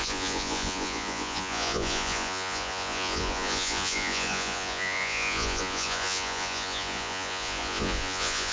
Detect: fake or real fake